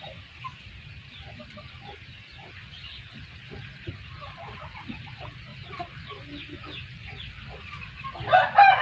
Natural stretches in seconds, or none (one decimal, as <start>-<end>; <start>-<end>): 0.0-8.8